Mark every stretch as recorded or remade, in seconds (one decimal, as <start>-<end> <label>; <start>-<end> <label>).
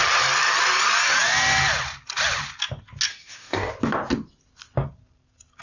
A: 0.0-3.1 recorded; 3.1-3.7 remade; 3.7-5.6 recorded